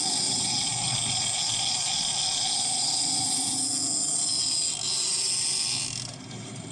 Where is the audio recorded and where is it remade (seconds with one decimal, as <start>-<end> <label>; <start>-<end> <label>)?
0.0-6.7 recorded